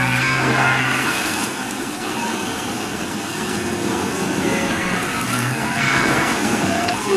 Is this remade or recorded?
remade